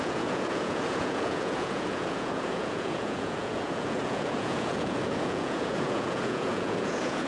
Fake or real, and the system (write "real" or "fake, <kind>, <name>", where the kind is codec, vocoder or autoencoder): fake, vocoder, Vocos